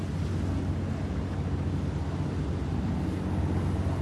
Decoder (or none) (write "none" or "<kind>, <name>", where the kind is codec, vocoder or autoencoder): none